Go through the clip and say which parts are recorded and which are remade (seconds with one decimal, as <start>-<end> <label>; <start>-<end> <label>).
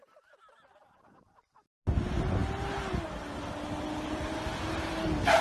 0.0-5.4 recorded